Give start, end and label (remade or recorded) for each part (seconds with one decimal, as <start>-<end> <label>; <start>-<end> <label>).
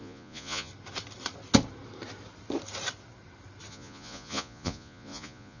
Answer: 0.0-0.7 remade; 0.7-3.7 recorded; 3.7-5.6 remade